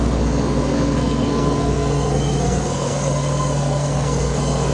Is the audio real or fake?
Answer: fake